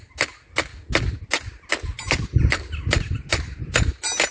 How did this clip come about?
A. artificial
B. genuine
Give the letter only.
B